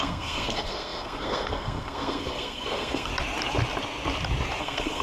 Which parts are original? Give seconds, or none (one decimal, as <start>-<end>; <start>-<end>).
3.1-4.6